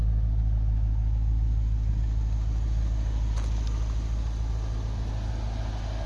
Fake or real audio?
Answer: real